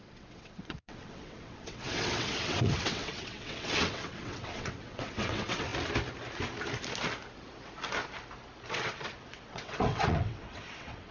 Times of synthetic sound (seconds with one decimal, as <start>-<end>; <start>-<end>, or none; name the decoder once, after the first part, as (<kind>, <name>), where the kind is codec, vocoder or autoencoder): 0.0-5.7 (vocoder, WaveNeXt); 8.7-11.1